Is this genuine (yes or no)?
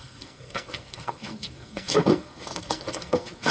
no